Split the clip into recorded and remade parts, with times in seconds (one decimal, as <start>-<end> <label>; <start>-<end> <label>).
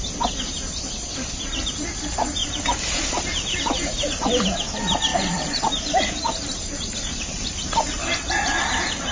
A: 0.0-2.4 recorded; 2.4-4.1 remade; 4.1-5.1 recorded; 5.1-8.6 remade; 8.6-9.1 recorded